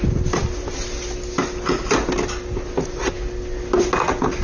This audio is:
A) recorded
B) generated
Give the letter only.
A